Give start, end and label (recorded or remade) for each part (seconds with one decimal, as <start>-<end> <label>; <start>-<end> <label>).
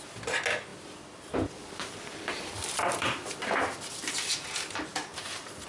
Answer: 0.0-0.7 recorded; 0.7-4.1 remade; 4.1-5.1 recorded; 5.1-5.7 remade